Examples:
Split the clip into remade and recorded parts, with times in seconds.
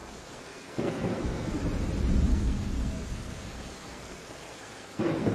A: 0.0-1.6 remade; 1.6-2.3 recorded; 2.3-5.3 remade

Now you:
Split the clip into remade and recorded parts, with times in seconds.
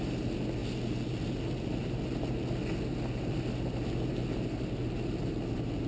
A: 0.0-5.9 recorded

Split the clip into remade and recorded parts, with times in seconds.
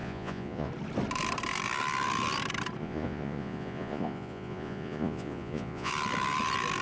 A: 0.0-0.7 remade; 0.7-2.8 recorded; 2.8-5.9 remade; 5.9-6.8 recorded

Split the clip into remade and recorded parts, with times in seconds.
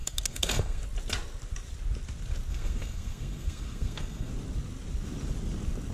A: 0.0-0.8 remade; 0.8-2.5 recorded; 2.5-4.3 remade; 4.3-5.9 recorded